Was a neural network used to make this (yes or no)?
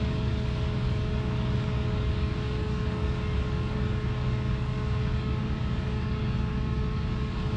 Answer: yes